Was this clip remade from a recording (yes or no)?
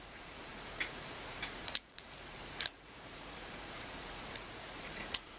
yes